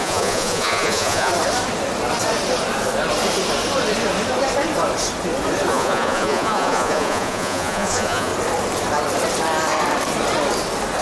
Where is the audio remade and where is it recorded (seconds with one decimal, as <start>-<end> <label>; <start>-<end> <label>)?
0.0-1.3 remade; 1.3-5.7 recorded; 5.7-8.3 remade; 8.3-11.0 recorded